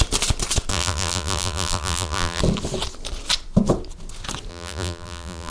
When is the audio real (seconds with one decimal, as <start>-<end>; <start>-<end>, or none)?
0.0-0.7; 2.4-4.5